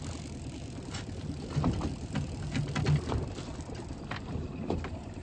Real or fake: real